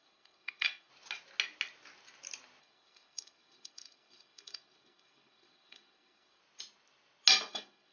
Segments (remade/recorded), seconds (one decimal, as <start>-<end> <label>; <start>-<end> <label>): 0.0-0.9 remade; 0.9-2.6 recorded; 2.6-6.4 remade; 6.4-7.5 recorded; 7.5-7.9 remade